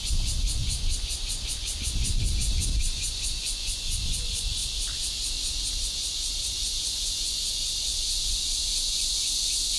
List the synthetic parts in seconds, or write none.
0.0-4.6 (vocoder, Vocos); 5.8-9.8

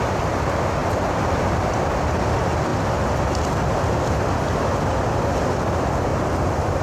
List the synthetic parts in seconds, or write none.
0.8-1.6 (vocoder, BigVGAN v2); 6.1-6.8

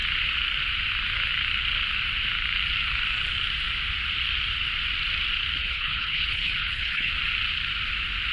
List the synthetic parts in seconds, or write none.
5.6-7.1 (codec, HILCodec)

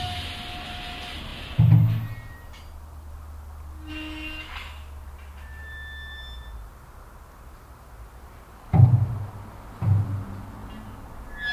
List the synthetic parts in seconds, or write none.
none

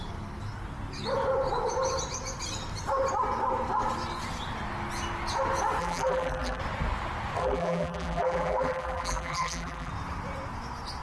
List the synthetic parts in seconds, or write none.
5.8-6.6 (vocoder, BigVGAN v2); 7.4-9.9

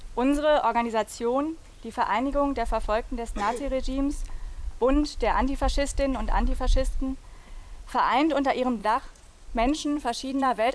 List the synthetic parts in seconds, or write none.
8.8-10.7 (vocoder, Vocos)

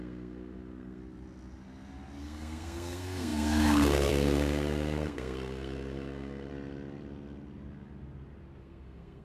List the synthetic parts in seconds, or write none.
0.0-1.0 (codec, SNAC); 2.2-6.5; 8.6-9.2